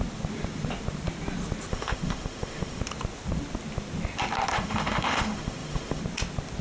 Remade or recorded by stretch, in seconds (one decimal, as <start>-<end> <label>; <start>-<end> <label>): 0.0-1.7 recorded; 1.7-2.8 remade; 2.8-4.5 recorded; 4.5-6.0 remade; 6.0-6.6 recorded